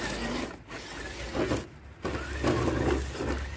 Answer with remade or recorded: recorded